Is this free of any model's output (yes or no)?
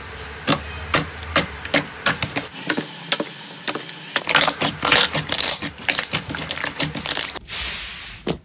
yes